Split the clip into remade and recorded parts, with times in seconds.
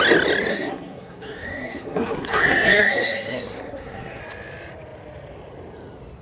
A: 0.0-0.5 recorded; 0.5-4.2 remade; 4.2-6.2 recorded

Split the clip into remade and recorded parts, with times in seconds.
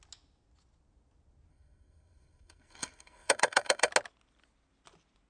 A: 0.0-1.5 recorded; 1.5-3.9 remade; 3.9-5.3 recorded